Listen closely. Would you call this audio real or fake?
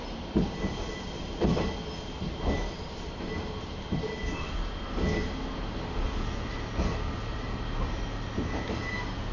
real